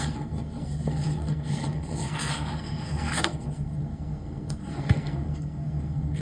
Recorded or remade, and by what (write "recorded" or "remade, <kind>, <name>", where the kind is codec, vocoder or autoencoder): remade, codec, SNAC